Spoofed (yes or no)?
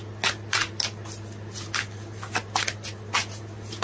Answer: no